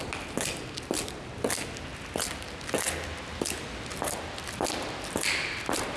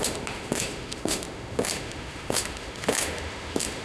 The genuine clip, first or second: first